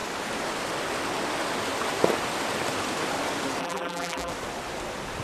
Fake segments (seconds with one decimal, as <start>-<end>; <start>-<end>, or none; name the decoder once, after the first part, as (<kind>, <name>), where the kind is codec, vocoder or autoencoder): 3.6-4.3 (vocoder, BigVGAN v2)